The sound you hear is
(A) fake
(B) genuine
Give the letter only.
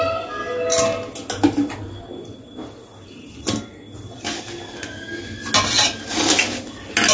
B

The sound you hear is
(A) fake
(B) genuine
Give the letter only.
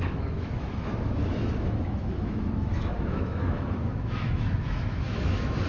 A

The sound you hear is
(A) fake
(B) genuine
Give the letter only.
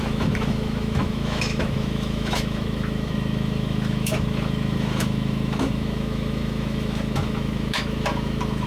A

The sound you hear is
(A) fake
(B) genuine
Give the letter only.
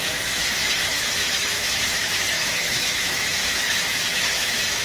A